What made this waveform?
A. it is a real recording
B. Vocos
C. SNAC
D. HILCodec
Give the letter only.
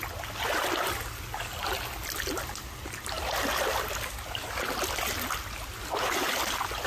A